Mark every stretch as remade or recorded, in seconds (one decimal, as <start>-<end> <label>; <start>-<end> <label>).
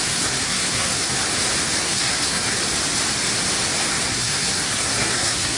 0.0-1.1 remade; 1.1-1.8 recorded; 1.8-2.6 remade; 2.6-4.1 recorded; 4.1-5.6 remade